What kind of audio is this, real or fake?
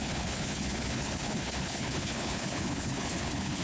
fake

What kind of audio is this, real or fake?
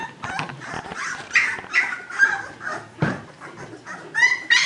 real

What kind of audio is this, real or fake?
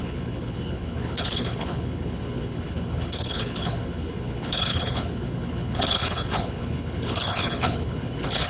fake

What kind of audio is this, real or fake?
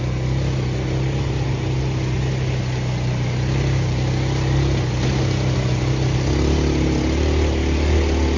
real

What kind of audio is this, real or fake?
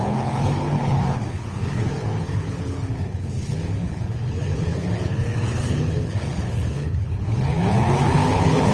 fake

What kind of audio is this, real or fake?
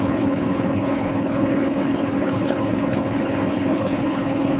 fake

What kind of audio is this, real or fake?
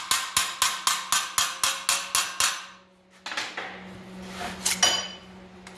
real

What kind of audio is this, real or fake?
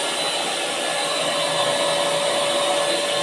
real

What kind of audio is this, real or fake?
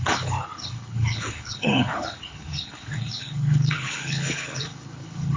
fake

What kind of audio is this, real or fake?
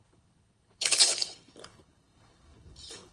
fake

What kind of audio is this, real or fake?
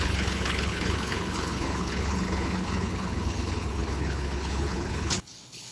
fake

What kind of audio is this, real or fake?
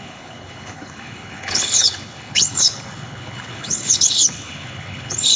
fake